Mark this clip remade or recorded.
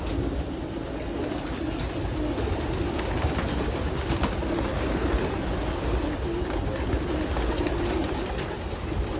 recorded